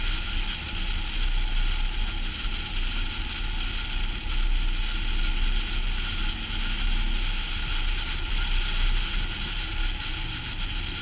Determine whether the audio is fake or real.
real